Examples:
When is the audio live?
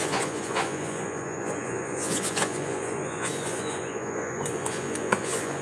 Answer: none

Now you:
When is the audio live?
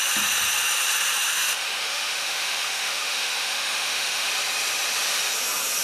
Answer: 0.0-1.3; 4.3-5.8